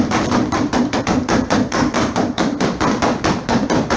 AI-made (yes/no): yes